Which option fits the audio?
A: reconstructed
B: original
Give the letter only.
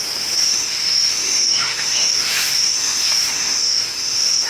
A